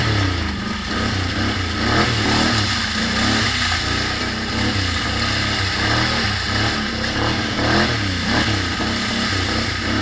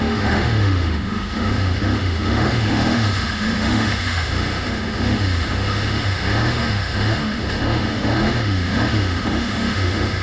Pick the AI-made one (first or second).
second